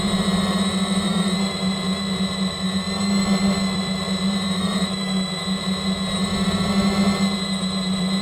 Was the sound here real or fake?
fake